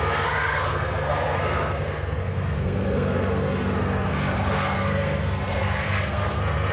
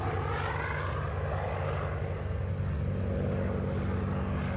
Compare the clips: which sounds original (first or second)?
second